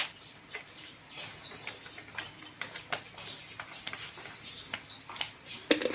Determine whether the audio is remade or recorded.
recorded